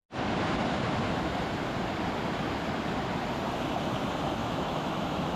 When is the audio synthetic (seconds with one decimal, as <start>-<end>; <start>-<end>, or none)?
4.4-5.4